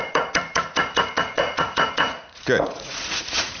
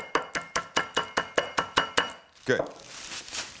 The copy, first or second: first